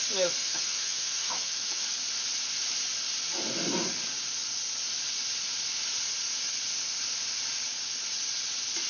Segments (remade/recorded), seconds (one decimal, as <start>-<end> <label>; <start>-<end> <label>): 0.0-0.4 recorded; 0.4-1.8 remade; 1.8-8.9 recorded